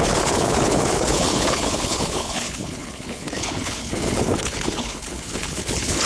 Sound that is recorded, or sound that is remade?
remade